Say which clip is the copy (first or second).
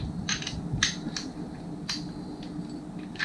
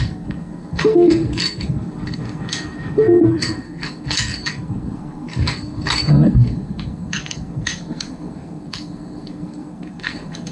second